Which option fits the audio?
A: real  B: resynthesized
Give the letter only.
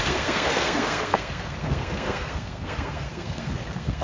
B